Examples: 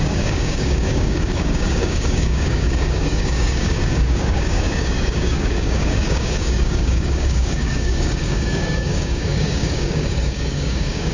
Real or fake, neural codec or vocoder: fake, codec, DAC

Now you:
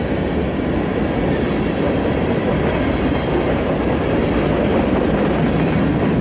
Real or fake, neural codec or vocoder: real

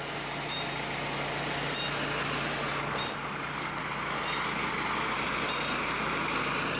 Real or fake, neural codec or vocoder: real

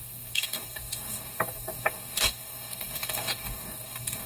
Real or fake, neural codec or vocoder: fake, codec, DAC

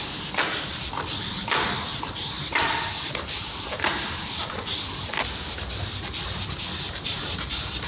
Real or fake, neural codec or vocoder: real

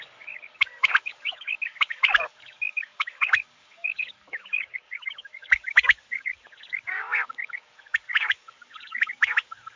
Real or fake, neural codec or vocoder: fake, codec, DAC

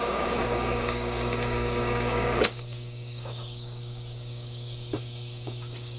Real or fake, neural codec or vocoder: fake, codec, DAC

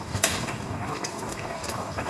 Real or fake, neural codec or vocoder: fake, codec, DAC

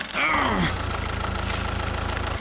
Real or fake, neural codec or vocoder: real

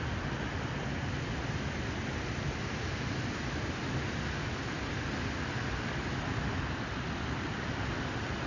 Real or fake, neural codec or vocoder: real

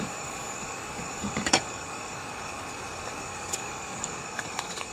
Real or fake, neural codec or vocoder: fake, codec, DAC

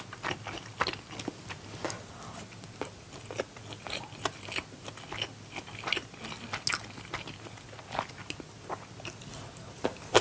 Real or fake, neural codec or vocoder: real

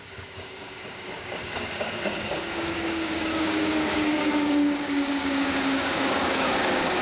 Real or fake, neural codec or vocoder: fake, codec, DAC